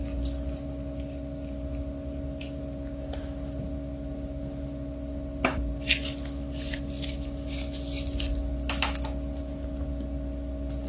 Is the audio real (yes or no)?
yes